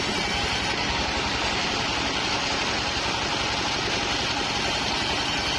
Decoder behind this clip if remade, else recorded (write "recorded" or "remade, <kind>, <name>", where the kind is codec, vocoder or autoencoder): recorded